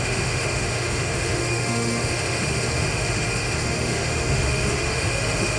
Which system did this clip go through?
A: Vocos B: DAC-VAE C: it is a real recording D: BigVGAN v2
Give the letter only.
B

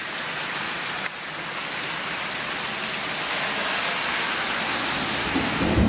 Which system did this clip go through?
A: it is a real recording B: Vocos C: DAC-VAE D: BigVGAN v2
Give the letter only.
A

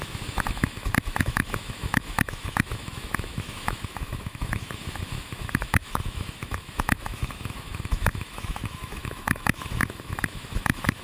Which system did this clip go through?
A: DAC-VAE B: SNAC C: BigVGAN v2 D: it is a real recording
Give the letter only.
A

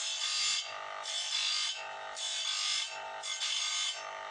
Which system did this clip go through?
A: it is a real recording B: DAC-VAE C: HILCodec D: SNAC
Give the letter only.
A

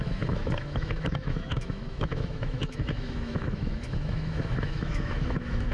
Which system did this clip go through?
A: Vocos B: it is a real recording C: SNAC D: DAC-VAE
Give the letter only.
D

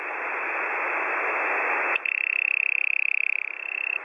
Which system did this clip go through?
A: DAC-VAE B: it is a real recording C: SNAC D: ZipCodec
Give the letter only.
B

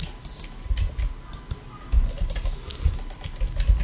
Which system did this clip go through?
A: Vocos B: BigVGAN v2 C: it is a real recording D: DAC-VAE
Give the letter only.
C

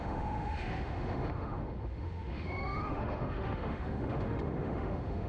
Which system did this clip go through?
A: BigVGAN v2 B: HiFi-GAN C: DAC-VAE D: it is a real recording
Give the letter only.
C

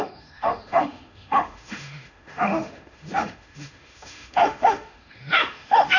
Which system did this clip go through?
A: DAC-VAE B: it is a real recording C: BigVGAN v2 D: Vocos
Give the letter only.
A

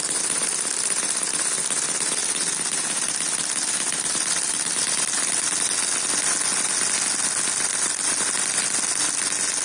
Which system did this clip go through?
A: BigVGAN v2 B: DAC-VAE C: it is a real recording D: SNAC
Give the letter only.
C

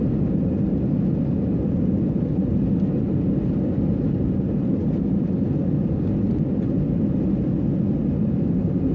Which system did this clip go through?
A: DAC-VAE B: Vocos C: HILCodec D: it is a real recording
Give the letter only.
D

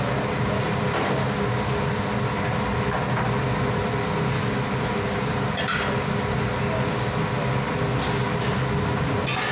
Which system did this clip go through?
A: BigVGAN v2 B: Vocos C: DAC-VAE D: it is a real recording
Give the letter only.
D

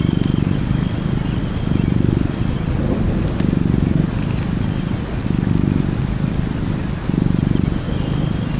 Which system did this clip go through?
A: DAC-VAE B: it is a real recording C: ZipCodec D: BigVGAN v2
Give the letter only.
B